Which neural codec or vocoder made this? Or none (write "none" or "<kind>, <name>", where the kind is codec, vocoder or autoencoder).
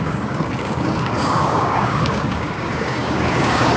codec, DAC